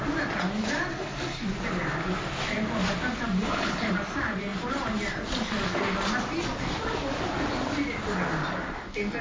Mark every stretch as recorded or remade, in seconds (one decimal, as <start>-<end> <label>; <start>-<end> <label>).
0.0-0.9 recorded; 0.9-1.4 remade; 1.4-3.4 recorded; 3.4-3.9 remade; 3.9-9.2 recorded